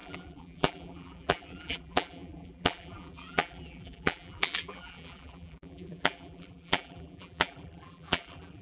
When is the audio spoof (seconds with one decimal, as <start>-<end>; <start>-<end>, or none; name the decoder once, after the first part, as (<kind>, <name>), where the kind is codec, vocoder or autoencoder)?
0.0-8.6 (vocoder, BigVGAN v2)